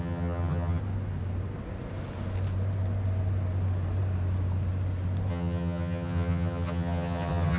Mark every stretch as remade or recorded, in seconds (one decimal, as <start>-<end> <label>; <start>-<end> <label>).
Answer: 0.0-0.8 remade; 0.8-5.3 recorded; 5.3-7.6 remade